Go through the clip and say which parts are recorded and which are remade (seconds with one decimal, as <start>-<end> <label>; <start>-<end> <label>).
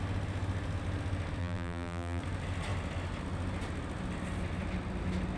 0.0-1.4 recorded; 1.4-2.2 remade; 2.2-5.4 recorded